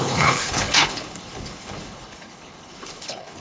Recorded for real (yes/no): no